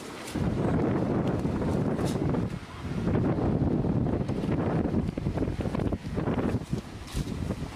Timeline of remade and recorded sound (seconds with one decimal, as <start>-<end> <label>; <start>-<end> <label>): 0.0-0.7 remade; 0.7-1.5 recorded; 1.5-2.2 remade; 2.2-4.2 recorded; 4.2-7.8 remade